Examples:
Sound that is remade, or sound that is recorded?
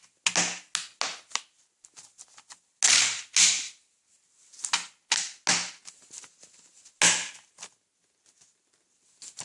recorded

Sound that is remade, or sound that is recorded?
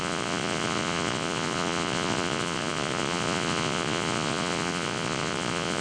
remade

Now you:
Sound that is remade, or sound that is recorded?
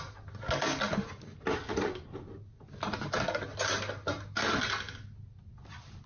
recorded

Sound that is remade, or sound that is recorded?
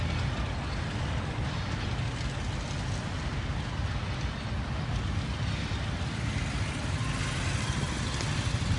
recorded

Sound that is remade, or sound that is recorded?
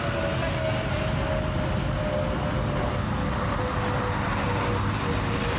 recorded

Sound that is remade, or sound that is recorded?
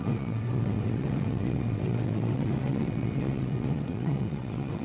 remade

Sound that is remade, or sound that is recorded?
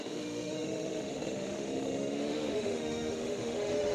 remade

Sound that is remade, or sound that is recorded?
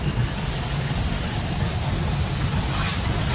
recorded